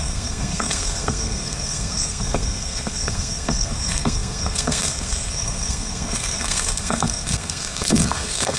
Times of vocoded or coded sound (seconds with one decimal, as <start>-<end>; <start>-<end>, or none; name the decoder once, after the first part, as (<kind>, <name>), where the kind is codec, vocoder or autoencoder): 0.0-8.6 (codec, SNAC)

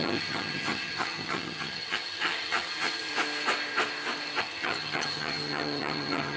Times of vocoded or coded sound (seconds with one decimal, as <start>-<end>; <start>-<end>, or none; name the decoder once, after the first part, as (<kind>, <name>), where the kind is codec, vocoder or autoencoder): 0.0-3.1 (vocoder, HiFi-GAN); 4.4-6.4